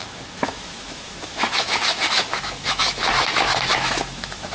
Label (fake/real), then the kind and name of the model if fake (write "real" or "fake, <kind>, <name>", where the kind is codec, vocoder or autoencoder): fake, autoencoder, DAC-VAE